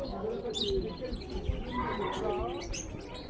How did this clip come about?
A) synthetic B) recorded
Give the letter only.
B